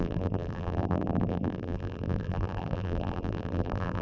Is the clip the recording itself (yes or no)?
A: no